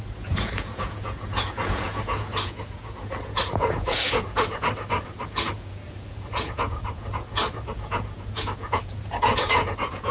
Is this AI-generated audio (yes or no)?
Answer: yes